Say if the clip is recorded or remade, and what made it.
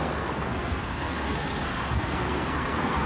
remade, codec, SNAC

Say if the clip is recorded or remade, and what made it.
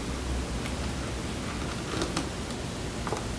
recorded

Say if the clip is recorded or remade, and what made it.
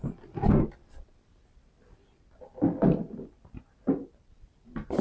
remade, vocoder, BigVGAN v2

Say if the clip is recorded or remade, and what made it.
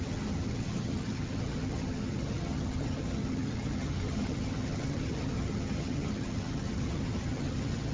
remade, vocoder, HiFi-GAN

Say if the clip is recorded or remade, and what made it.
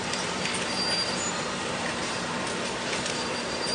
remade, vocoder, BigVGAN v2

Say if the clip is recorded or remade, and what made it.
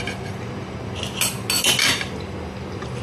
recorded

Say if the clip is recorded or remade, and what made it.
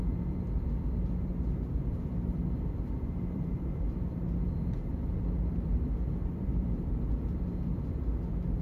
remade, vocoder, BigVGAN v2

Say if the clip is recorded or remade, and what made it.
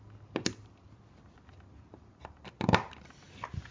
recorded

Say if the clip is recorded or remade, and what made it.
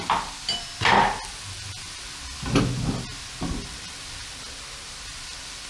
recorded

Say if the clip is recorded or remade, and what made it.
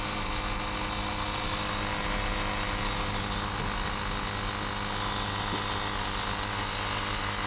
recorded